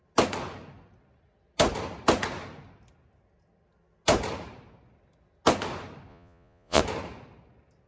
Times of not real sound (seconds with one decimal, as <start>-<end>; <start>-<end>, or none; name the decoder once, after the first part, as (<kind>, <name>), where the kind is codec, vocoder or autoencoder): 6.1-6.8 (vocoder, Vocos)